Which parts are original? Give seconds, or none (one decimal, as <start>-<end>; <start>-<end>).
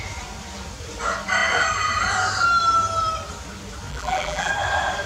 0.0-3.9; 4.5-5.1